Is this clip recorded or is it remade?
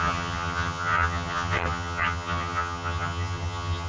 remade